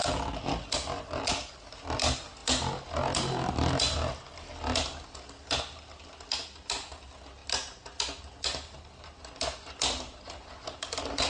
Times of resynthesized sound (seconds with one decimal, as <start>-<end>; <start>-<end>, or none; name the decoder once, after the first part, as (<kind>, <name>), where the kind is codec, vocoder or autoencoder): none